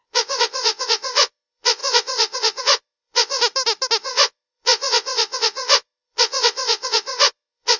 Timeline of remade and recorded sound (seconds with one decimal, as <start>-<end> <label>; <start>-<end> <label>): 0.0-3.4 remade; 3.4-4.0 recorded; 4.0-7.8 remade